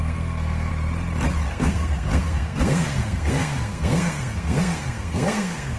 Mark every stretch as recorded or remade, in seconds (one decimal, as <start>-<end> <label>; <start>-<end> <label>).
0.0-0.7 remade; 0.7-1.5 recorded; 1.5-5.8 remade

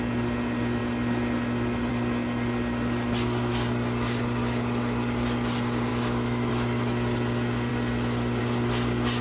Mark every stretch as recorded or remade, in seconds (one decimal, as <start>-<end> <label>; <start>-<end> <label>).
0.0-5.9 recorded; 5.9-6.5 remade; 6.5-9.2 recorded